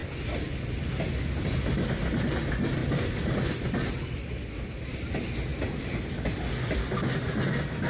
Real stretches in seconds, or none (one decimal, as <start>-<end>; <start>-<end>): 0.0-7.9